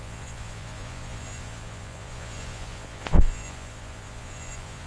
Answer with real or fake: fake